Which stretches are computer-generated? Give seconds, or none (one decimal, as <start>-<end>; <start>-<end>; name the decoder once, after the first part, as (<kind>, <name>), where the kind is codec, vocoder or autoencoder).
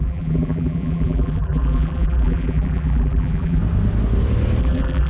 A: 0.0-3.6 (vocoder, BigVGAN v2); 4.6-5.1